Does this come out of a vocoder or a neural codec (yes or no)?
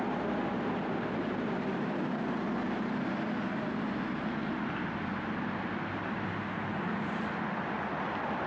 no